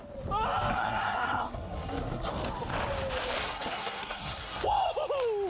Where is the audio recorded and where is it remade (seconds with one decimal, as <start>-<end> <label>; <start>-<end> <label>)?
0.0-0.7 recorded; 0.7-2.3 remade; 2.3-3.4 recorded; 3.4-4.6 remade; 4.6-5.5 recorded